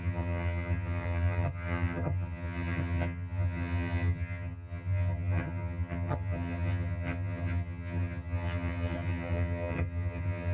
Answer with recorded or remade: remade